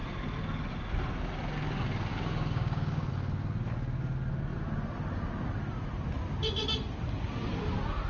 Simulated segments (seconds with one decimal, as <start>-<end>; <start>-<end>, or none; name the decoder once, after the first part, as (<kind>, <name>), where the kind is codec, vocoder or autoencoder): 2.1-3.1 (codec, DAC)

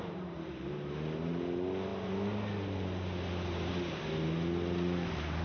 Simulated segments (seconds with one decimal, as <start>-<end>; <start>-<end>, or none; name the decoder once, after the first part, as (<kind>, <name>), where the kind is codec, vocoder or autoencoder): none

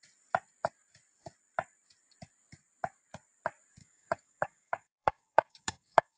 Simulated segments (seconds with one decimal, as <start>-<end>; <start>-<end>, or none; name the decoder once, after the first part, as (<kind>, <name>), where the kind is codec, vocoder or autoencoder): 3.8-6.2 (codec, DAC)

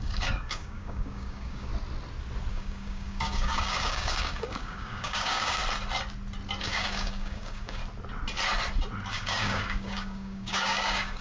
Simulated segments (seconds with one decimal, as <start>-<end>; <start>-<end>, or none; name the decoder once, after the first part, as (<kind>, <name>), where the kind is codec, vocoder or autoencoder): 0.0-1.7 (codec, DAC); 2.5-5.6; 6.6-7.8; 9.1-11.2

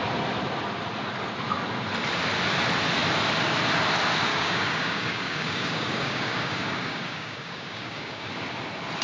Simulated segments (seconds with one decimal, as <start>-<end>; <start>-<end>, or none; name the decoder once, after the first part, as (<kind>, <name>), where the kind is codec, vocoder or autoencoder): 4.3-8.3 (codec, DAC)

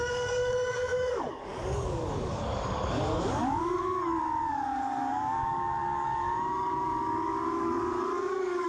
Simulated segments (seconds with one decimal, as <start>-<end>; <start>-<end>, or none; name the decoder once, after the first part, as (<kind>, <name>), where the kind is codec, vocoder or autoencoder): 0.0-8.7 (codec, DAC)

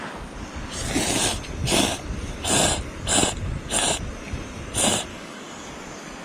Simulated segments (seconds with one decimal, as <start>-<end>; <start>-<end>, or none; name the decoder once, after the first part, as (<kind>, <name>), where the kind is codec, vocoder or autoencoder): 5.1-5.7 (codec, DAC)